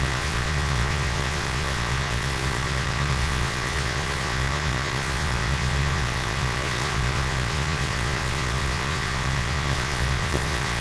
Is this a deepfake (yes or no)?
yes